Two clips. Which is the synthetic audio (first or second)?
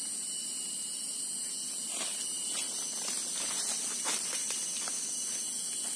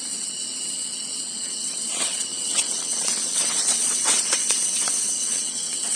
second